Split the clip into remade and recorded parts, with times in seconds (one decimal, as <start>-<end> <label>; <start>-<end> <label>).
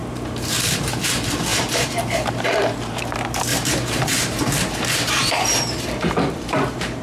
0.0-0.8 remade; 0.8-1.5 recorded; 1.5-3.0 remade; 3.0-3.5 recorded; 3.5-7.0 remade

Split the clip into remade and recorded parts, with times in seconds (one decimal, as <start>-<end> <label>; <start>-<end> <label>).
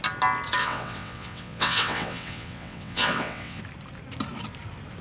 0.0-0.6 recorded; 0.6-3.6 remade; 3.6-5.0 recorded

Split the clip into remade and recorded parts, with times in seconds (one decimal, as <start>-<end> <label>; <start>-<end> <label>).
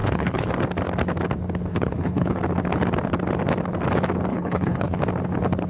0.0-0.5 remade; 0.5-1.7 recorded; 1.7-2.4 remade; 2.4-4.3 recorded; 4.3-5.0 remade; 5.0-5.7 recorded